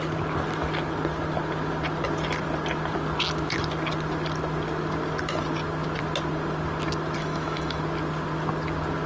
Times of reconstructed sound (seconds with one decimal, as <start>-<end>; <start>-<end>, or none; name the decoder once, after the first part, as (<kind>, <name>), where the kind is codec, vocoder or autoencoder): 7.2-7.8 (autoencoder, DAC-VAE)